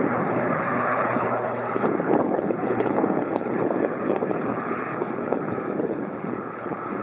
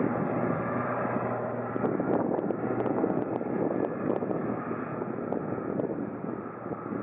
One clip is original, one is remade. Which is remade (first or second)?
first